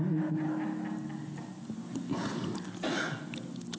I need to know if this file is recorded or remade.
recorded